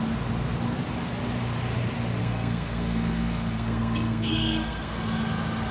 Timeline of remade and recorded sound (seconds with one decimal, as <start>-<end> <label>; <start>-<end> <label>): 0.0-2.2 recorded; 2.2-5.0 remade; 5.0-5.7 recorded